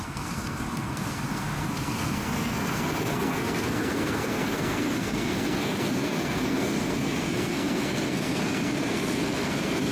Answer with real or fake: fake